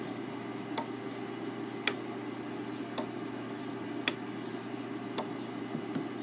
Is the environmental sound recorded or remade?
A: recorded